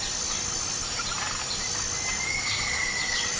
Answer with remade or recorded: recorded